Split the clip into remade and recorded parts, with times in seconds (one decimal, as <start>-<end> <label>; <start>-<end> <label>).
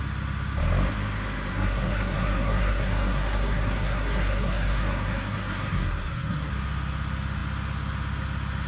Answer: 0.0-1.5 recorded; 1.5-6.5 remade; 6.5-8.7 recorded